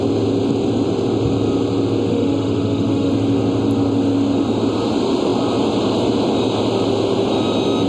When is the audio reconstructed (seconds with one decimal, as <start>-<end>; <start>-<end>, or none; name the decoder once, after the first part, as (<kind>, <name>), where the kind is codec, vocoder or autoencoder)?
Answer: 2.1-3.1 (autoencoder, DAC-VAE)